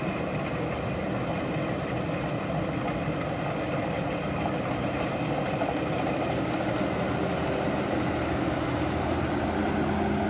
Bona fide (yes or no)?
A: yes